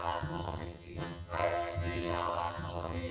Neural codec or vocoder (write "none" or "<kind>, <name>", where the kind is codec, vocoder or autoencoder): vocoder, HiFi-GAN